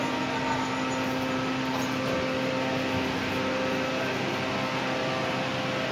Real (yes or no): yes